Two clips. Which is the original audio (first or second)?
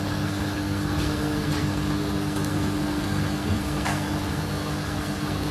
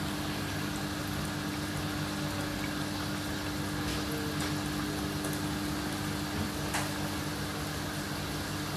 second